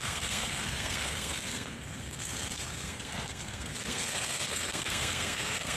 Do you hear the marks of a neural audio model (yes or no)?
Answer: yes